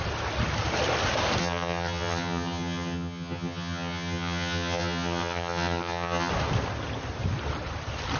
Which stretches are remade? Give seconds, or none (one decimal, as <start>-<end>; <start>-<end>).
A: 1.4-6.3